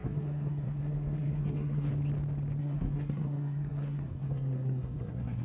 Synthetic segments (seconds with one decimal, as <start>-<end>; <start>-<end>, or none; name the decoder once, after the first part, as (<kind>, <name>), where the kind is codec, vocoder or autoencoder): 0.0-1.9 (codec, SNAC); 2.6-5.4